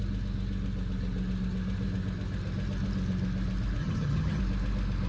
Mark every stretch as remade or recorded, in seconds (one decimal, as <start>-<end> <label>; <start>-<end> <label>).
0.0-3.8 recorded; 3.8-4.4 remade; 4.4-5.1 recorded